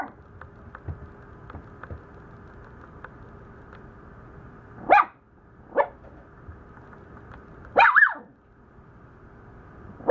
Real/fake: real